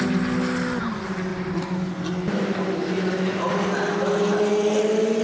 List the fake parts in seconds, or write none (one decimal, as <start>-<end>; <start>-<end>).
none